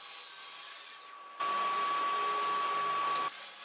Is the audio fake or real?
real